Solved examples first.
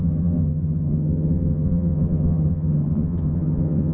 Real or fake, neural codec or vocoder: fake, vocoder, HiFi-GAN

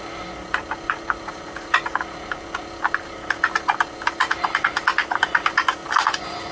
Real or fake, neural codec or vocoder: real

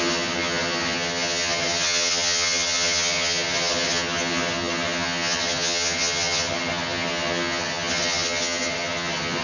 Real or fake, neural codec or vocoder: fake, vocoder, HiFi-GAN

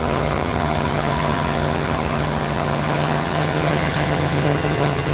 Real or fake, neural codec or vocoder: fake, vocoder, HiFi-GAN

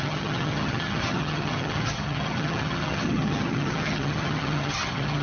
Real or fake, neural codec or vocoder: fake, vocoder, HiFi-GAN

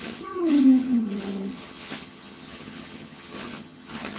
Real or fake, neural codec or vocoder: fake, vocoder, HiFi-GAN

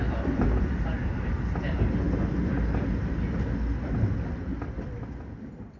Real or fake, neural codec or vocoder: real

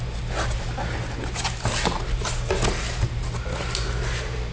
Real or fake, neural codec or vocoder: real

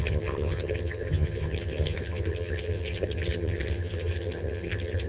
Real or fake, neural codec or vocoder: fake, vocoder, HiFi-GAN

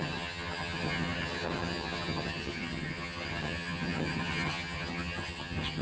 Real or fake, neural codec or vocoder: fake, vocoder, HiFi-GAN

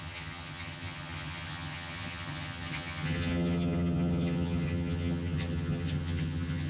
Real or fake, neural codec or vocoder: fake, vocoder, HiFi-GAN